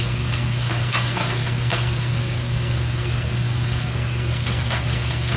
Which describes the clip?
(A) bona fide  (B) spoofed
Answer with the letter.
B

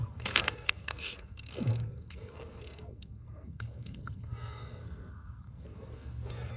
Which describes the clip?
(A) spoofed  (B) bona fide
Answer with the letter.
A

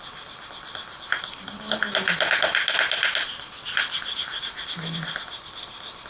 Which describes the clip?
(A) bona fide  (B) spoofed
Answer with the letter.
A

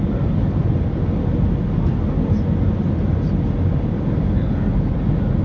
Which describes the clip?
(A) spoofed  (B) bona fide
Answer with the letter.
B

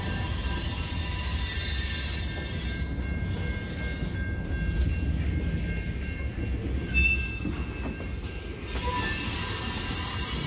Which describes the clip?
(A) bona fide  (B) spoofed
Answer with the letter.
A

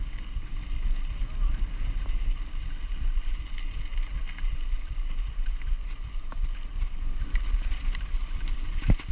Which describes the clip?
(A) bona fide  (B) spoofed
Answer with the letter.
A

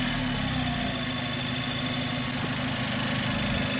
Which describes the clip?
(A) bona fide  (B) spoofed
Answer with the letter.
A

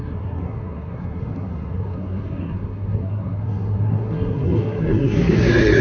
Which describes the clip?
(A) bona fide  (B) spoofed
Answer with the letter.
B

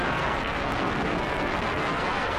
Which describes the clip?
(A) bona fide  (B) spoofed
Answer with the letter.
B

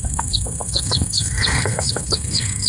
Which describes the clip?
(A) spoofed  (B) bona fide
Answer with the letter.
A